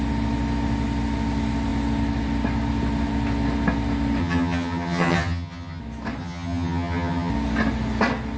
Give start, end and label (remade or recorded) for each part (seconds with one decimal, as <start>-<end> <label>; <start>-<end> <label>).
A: 0.0-4.2 recorded; 4.2-5.8 remade; 5.8-6.2 recorded; 6.2-7.3 remade; 7.3-8.4 recorded